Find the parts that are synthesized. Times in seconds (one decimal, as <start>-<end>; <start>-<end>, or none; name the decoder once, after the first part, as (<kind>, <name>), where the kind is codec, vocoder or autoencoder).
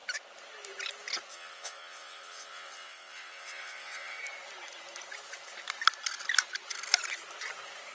1.3-4.2 (vocoder, WaveNeXt)